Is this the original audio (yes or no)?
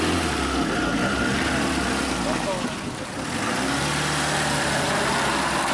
yes